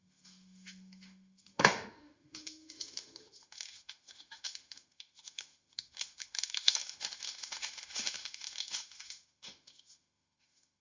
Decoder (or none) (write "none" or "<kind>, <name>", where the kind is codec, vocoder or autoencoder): autoencoder, DAC-VAE